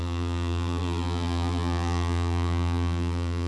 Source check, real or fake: fake